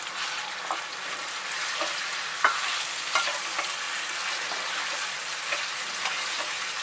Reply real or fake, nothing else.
real